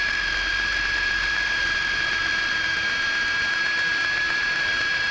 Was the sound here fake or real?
fake